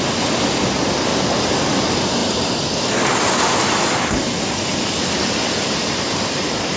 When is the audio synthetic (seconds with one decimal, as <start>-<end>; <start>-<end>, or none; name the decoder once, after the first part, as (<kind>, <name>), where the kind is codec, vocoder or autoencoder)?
none